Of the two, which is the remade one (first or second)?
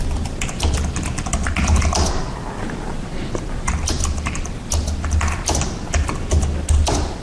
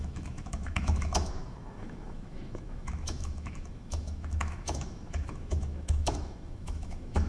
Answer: second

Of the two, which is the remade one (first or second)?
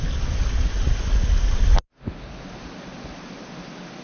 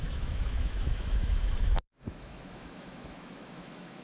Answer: second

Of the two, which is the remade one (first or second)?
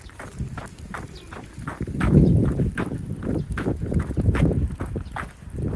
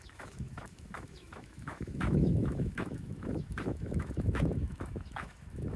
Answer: second